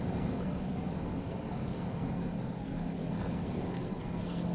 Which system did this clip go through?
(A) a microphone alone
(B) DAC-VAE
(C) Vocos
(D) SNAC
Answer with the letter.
D